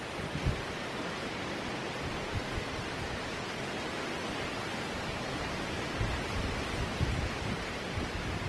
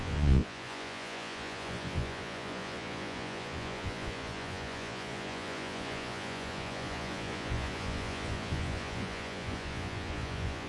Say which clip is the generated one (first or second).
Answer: second